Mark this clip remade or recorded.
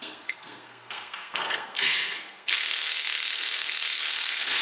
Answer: remade